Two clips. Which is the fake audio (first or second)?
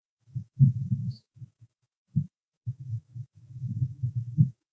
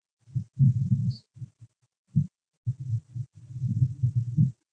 first